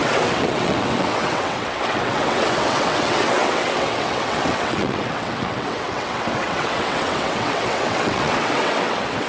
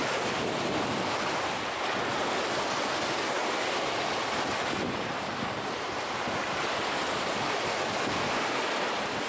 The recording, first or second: second